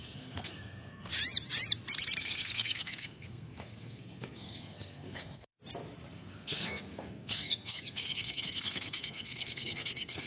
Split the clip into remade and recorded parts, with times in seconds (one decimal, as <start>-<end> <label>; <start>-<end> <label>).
0.0-1.1 remade; 1.1-2.2 recorded; 2.2-5.5 remade; 5.5-6.1 recorded; 6.1-10.3 remade